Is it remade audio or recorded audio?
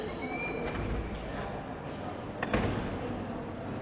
recorded